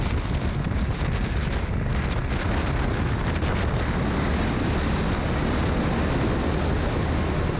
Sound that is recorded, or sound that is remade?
recorded